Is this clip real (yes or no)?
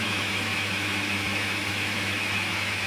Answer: no